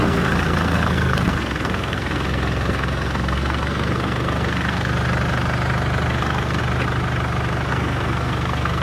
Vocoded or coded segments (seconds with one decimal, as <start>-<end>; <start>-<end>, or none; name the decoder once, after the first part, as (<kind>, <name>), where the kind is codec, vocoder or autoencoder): 0.0-4.9 (codec, SNAC); 6.1-6.6; 7.7-8.8